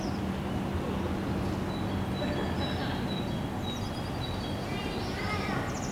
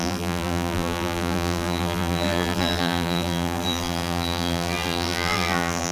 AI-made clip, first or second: second